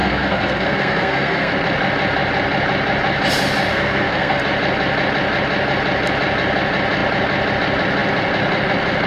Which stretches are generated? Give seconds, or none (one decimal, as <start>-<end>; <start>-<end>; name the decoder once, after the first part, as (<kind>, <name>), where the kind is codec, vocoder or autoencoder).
0.0-1.5 (codec, SNAC); 3.7-4.4

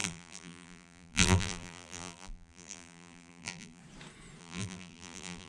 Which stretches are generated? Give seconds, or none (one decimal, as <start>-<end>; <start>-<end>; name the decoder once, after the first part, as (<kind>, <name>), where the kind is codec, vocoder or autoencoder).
0.0-3.8 (vocoder, BigVGAN v2); 4.4-5.5

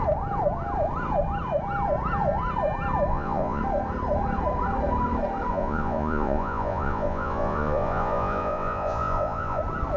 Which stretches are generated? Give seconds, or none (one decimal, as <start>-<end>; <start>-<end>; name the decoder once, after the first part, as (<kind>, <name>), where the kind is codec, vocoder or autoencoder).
3.1-3.6 (vocoder, Vocos); 5.5-9.6

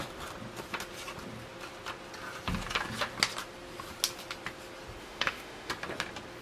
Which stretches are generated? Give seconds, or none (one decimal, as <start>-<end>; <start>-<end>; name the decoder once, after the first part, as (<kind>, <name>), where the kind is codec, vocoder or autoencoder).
5.0-5.7 (autoencoder, DAC-VAE)

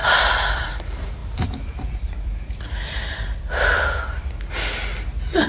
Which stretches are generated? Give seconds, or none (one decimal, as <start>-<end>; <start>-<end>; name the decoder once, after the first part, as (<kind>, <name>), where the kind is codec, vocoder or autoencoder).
0.0-0.7 (vocoder, BigVGAN v2); 1.2-4.5

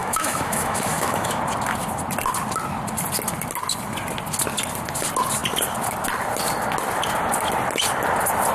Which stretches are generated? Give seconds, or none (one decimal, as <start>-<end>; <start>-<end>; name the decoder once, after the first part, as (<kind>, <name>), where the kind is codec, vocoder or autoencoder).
0.0-1.4 (autoencoder, DAC-VAE)